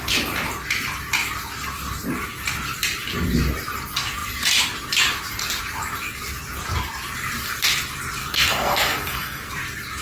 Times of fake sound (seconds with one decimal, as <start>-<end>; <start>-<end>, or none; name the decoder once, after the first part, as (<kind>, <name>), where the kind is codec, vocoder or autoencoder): 8.2-9.5 (codec, SNAC)